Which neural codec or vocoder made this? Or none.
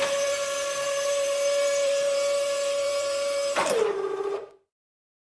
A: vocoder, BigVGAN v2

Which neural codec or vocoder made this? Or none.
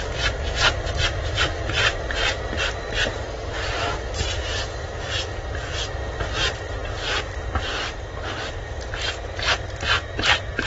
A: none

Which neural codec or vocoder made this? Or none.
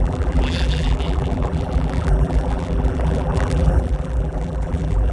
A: vocoder, BigVGAN v2